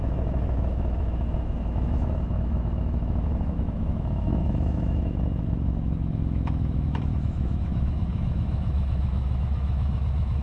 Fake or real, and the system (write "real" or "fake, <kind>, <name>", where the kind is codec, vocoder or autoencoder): fake, autoencoder, DAC-VAE